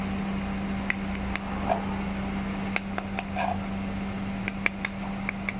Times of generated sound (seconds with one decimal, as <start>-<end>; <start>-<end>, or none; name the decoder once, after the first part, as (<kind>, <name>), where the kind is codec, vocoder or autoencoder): none